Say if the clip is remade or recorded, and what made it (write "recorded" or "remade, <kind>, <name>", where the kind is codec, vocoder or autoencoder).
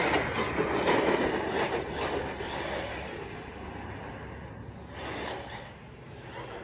recorded